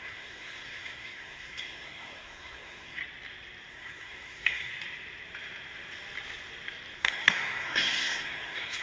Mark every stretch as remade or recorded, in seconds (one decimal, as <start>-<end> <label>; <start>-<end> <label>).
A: 0.0-3.0 remade; 3.0-3.7 recorded; 3.7-4.7 remade; 4.7-7.0 recorded; 7.0-8.8 remade